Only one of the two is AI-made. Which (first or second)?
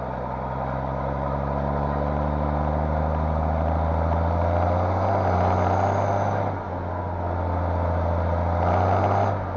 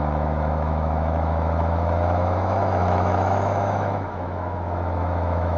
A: second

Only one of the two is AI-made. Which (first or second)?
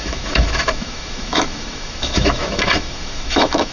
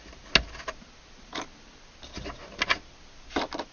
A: first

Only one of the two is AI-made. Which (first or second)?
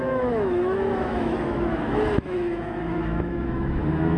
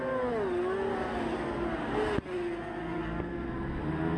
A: first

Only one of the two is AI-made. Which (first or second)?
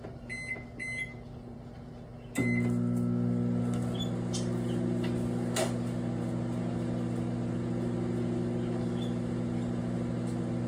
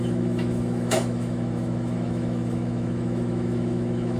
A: second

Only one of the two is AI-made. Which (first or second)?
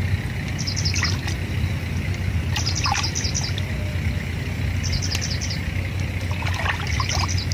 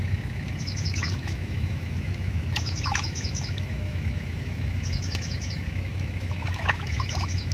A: second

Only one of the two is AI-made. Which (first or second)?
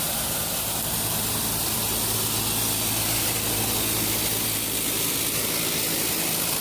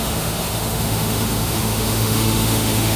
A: second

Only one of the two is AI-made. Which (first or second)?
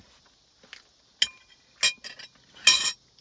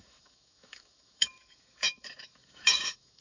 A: second